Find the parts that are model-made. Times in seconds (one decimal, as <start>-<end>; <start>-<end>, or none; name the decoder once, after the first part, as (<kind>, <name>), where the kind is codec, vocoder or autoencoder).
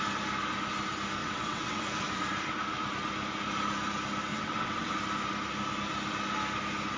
1.2-1.8 (vocoder, WaveNeXt); 4.3-4.9